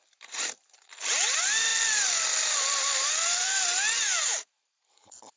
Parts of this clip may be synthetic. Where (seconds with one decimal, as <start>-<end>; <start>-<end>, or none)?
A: 0.0-5.4